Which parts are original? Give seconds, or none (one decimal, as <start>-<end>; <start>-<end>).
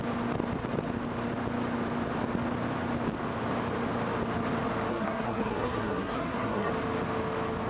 0.0-4.9; 6.7-7.7